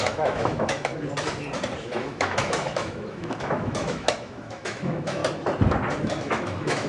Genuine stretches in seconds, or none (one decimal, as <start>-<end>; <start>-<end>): 0.9-1.8; 5.2-6.0